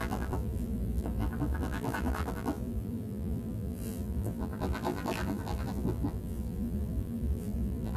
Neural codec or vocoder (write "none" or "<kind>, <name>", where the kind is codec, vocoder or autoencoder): vocoder, BigVGAN v2